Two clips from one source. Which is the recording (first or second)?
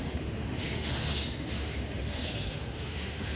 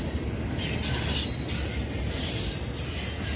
second